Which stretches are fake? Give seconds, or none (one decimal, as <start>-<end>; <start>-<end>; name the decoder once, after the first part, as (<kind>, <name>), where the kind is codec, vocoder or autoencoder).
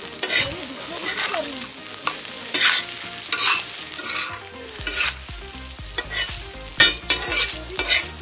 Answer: none